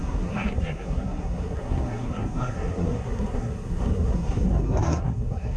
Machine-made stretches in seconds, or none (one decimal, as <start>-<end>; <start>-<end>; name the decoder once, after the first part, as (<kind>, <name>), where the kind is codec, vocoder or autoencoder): 0.0-5.6 (codec, SNAC)